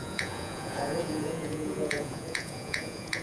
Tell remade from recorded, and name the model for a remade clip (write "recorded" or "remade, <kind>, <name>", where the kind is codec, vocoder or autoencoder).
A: remade, vocoder, Vocos